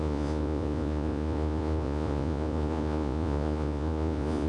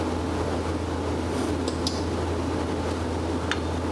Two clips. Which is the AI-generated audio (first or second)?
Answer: first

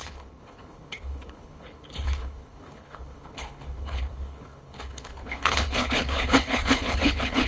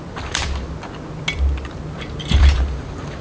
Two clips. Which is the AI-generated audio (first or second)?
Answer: first